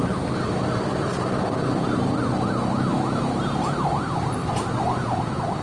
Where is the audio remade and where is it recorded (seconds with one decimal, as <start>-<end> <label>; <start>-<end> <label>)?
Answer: 0.0-5.6 recorded